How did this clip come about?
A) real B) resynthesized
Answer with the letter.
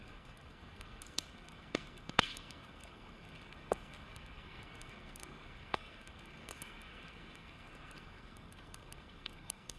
B